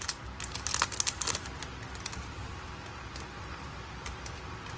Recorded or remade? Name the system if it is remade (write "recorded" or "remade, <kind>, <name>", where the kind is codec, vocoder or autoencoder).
recorded